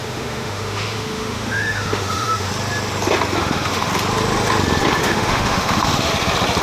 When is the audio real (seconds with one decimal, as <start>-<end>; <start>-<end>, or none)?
2.5-3.4; 3.9-5.0; 6.1-6.6